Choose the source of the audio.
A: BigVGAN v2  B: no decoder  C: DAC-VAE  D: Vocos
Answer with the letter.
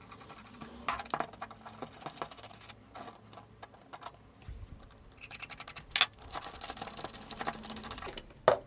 B